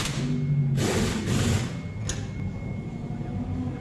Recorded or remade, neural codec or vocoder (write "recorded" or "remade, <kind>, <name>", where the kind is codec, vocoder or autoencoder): recorded